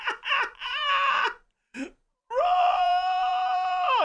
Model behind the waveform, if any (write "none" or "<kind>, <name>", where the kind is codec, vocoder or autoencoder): vocoder, BigVGAN v2